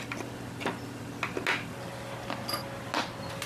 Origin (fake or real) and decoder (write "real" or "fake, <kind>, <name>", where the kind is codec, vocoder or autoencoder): real